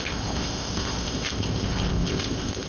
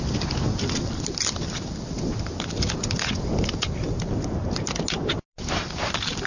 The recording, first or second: second